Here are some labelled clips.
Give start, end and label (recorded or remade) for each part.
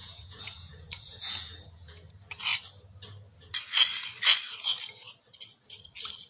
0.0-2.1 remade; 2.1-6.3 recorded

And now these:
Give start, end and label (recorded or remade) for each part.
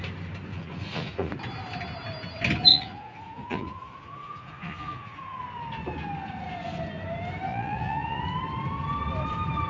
0.0-0.5 recorded; 0.5-1.3 remade; 1.3-2.7 recorded; 2.7-5.4 remade; 5.4-7.5 recorded; 7.5-8.2 remade; 8.2-9.7 recorded